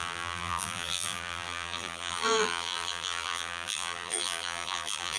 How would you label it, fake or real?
fake